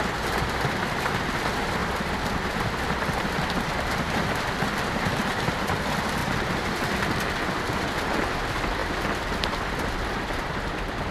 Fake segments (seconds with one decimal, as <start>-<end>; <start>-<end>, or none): 1.8-5.8; 6.2-7.0